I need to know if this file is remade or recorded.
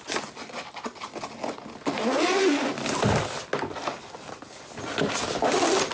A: recorded